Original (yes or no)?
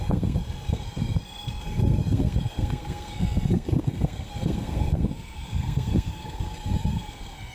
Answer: no